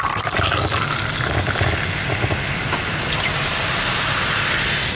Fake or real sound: real